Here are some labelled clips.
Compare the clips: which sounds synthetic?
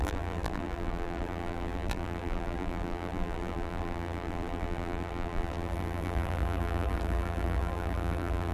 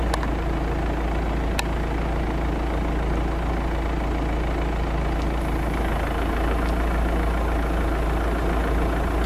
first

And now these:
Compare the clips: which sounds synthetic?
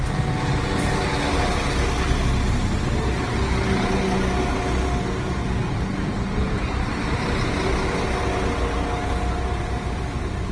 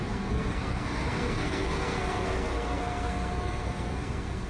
second